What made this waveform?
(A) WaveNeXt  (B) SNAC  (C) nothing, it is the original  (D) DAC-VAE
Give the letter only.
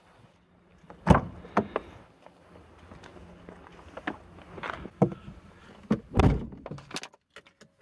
C